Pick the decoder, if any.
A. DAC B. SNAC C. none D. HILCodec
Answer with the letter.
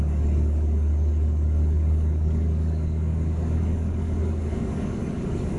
A